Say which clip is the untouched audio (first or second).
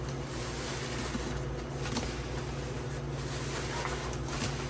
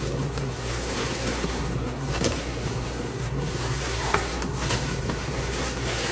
first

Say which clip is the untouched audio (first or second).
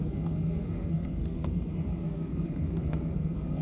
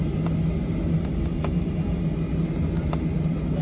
second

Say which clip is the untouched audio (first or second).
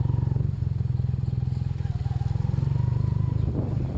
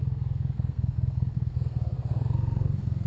first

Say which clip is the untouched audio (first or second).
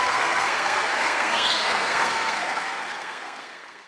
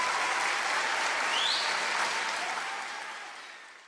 second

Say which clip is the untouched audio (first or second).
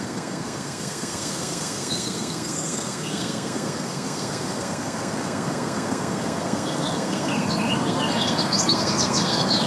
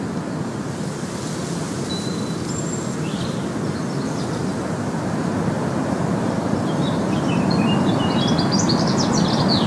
second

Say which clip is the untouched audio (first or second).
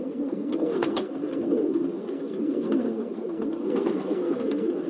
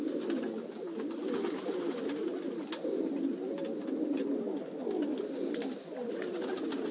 second